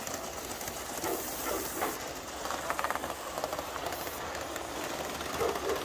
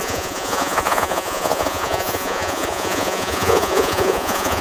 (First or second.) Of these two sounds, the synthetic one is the second